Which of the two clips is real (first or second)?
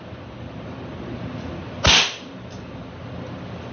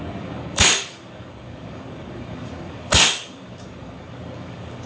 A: first